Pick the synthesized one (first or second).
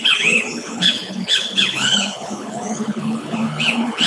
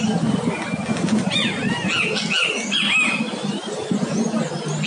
first